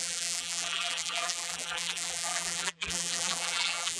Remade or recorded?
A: remade